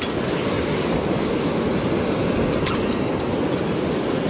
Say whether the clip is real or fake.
real